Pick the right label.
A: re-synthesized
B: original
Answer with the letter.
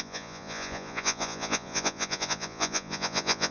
A